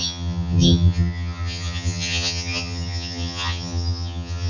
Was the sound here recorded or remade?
remade